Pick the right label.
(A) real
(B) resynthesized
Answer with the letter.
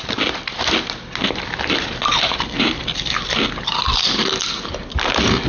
A